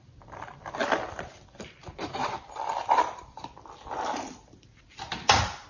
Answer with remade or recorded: remade